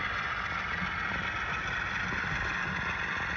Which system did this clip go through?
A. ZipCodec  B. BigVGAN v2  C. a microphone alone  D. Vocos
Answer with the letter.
C